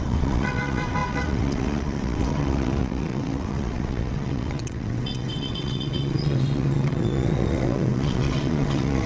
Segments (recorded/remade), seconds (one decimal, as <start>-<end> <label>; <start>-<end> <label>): 0.0-9.1 remade